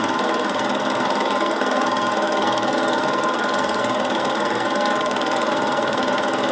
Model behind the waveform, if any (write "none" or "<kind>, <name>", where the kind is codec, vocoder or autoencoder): codec, SNAC